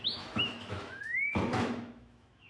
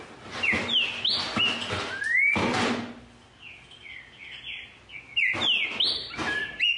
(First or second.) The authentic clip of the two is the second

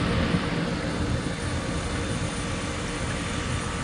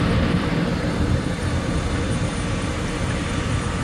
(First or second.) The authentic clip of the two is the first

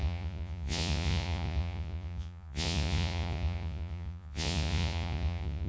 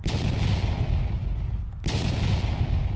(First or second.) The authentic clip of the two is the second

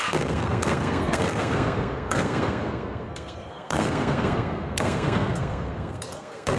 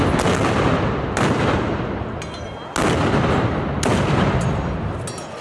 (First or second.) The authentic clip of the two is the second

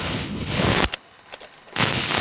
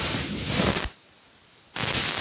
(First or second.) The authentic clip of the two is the second